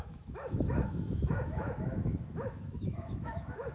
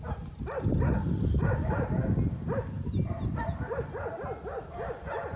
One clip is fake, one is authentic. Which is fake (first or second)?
first